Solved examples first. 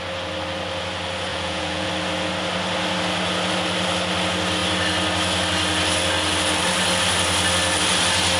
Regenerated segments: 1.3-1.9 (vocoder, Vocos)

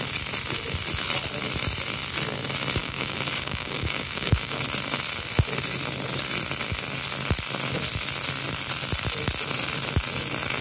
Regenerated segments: 2.8-4.6 (codec, DAC)

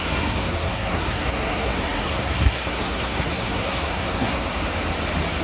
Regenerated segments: 0.0-4.5 (codec, SNAC)

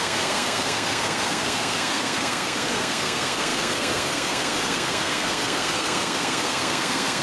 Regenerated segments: 0.0-7.2 (codec, SNAC)

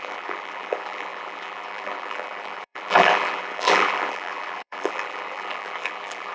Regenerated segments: 0.0-6.3 (vocoder, BigVGAN v2)